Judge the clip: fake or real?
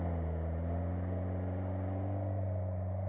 real